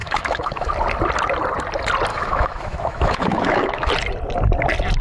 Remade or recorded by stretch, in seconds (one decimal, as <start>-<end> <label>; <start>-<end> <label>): 0.0-0.7 remade; 0.7-2.1 recorded; 2.1-3.9 remade; 3.9-5.0 recorded